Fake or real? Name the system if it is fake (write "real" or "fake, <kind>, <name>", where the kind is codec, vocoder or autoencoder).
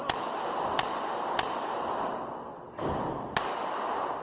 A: real